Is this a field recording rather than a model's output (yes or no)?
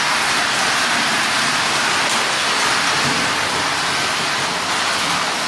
yes